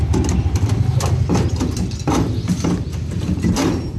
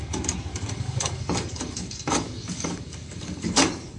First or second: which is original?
first